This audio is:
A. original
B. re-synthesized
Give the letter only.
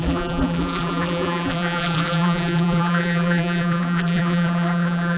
B